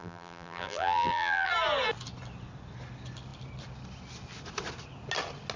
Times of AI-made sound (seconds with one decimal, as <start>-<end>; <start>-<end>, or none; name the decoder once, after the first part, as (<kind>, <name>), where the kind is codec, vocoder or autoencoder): 0.0-1.5 (vocoder, BigVGAN v2)